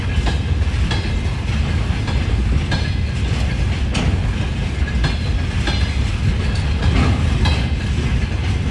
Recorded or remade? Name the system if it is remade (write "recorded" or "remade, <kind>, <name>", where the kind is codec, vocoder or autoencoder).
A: recorded